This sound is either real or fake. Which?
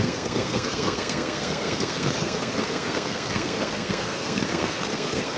fake